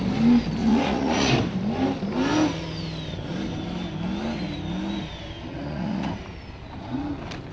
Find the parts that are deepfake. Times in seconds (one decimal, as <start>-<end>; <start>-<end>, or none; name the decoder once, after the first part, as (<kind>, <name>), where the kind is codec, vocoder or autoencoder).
0.6-1.3 (vocoder, Vocos); 5.5-6.1